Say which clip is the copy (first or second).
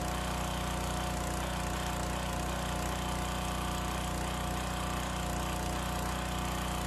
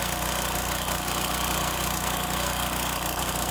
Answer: second